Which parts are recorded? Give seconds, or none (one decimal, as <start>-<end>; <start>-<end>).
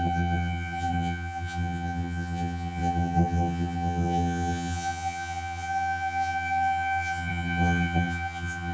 none